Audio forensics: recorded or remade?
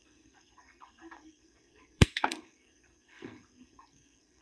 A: remade